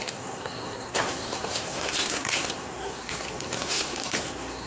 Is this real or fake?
fake